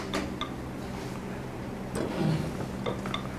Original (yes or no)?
yes